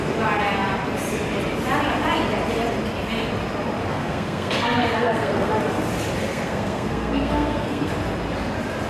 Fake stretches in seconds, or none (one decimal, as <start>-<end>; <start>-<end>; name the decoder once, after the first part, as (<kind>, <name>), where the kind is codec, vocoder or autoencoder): 3.9-5.5 (codec, SNAC); 6.3-7.9